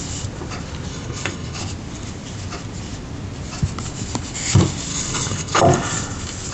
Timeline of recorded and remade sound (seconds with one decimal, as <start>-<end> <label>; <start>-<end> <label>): 0.0-0.9 recorded; 0.9-1.6 remade; 1.6-4.9 recorded; 4.9-5.6 remade; 5.6-6.5 recorded